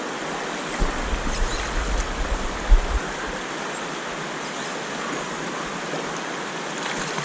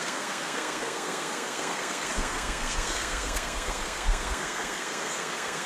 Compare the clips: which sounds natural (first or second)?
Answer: first